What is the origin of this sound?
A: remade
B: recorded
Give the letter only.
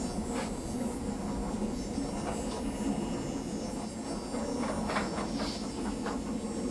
B